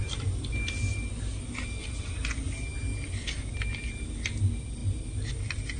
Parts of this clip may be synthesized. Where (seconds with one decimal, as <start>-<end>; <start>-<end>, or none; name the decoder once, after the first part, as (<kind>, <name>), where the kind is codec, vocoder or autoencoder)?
none